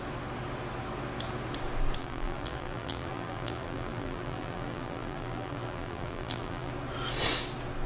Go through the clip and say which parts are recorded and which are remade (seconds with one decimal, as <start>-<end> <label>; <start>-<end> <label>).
0.0-2.0 recorded; 2.0-6.7 remade; 6.7-7.9 recorded